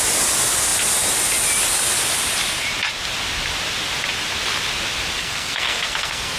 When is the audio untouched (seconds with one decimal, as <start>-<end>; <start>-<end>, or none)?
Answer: 0.0-5.2